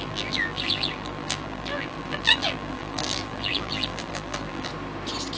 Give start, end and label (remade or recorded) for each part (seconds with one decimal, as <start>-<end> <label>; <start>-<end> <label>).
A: 0.0-4.7 remade; 4.7-5.4 recorded